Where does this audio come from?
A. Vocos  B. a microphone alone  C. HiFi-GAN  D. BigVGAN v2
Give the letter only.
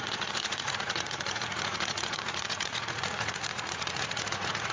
A